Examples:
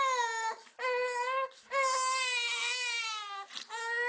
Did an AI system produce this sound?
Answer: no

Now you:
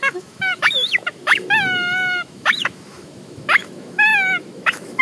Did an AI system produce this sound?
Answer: yes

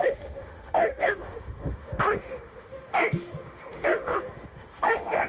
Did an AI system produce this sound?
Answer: yes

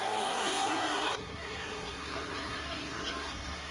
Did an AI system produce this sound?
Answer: yes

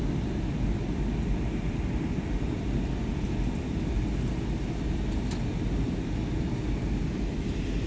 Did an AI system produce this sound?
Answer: no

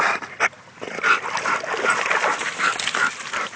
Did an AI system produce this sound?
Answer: no